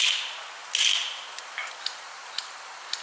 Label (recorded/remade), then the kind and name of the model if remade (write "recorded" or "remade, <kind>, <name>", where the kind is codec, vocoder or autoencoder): recorded